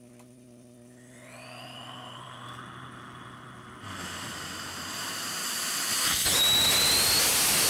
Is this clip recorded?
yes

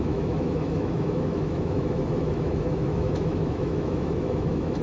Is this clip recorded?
no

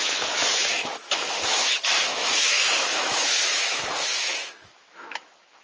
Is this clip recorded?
no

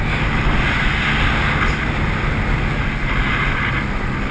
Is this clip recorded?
yes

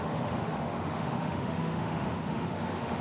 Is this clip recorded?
no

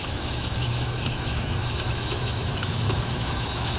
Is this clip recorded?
no